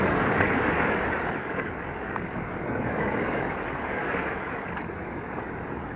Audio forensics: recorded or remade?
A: remade